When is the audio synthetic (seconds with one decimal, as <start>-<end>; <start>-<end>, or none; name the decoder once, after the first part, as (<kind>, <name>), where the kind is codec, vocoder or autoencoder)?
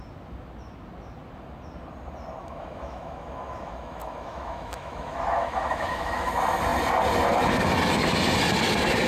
2.4-6.3 (autoencoder, DAC-VAE)